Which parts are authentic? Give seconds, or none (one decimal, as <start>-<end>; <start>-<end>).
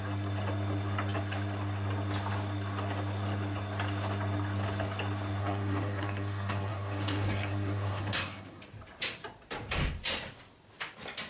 0.0-5.4; 8.6-11.3